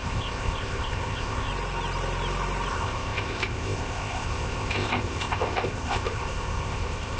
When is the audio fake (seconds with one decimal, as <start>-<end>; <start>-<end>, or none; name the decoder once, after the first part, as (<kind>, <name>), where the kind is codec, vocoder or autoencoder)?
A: 0.0-1.5 (codec, ZipCodec); 2.7-7.2